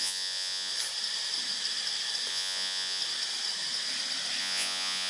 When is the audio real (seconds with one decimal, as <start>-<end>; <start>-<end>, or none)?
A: 0.7-2.3; 3.0-4.4